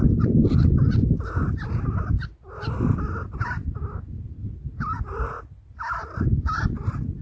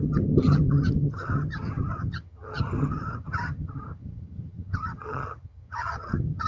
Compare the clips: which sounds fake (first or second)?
second